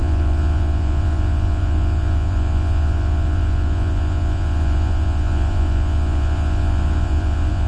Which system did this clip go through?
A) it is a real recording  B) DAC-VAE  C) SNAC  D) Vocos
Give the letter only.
D